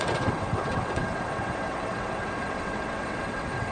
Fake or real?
fake